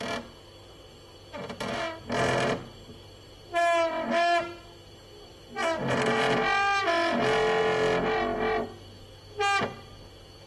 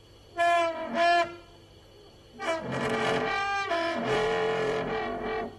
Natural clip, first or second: first